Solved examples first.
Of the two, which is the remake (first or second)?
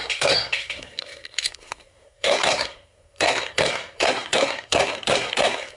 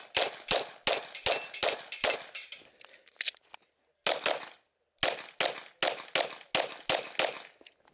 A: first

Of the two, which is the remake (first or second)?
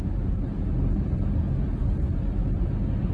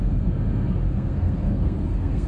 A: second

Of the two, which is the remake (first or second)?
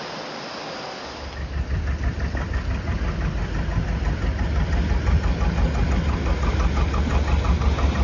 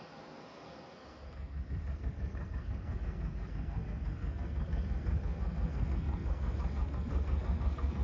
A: second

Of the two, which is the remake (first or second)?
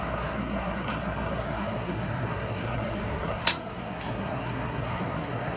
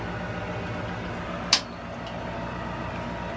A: first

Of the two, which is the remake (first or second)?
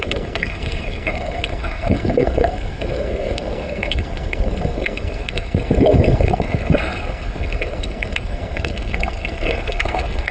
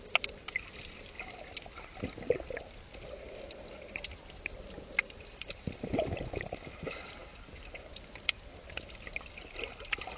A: first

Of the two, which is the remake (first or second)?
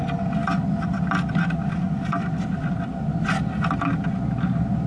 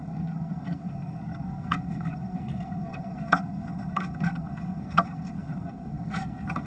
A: second